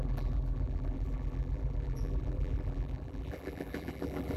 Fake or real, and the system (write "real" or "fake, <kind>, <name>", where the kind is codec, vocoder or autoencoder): fake, vocoder, BigVGAN v2